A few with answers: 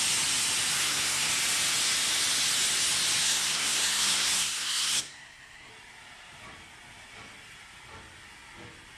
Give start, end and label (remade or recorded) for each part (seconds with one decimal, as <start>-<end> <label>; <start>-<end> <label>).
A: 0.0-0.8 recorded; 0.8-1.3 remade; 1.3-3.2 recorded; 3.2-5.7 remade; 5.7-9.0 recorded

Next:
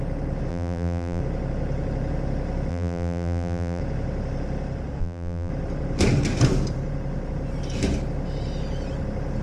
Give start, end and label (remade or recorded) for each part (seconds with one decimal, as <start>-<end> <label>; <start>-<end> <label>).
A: 0.0-0.5 recorded; 0.5-1.2 remade; 1.2-2.7 recorded; 2.7-3.8 remade; 3.8-5.0 recorded; 5.0-5.5 remade; 5.5-9.4 recorded

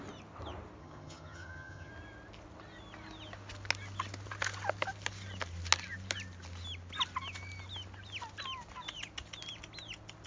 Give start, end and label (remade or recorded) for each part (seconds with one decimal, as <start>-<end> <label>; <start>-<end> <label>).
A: 0.0-0.8 recorded; 0.8-1.9 remade; 1.9-10.3 recorded

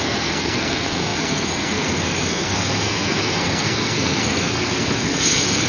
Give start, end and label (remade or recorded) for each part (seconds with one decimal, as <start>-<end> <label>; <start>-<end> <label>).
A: 0.0-5.7 remade